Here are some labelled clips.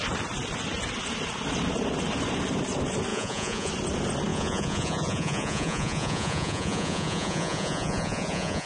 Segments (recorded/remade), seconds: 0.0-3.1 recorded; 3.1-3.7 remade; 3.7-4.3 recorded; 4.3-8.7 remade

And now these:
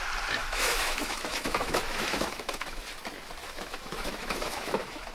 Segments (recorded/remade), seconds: 0.0-0.4 recorded; 0.4-2.8 remade; 2.8-3.4 recorded; 3.4-5.1 remade